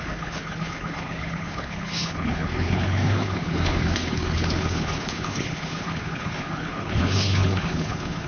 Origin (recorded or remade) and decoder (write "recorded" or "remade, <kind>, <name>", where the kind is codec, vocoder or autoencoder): remade, codec, HILCodec